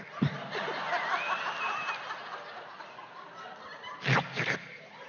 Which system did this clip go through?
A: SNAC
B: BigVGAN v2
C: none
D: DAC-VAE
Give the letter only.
C